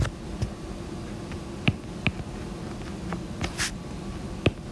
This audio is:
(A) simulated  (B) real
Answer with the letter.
B